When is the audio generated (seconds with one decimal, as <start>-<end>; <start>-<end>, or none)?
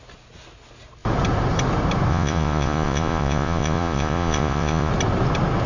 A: 2.1-4.9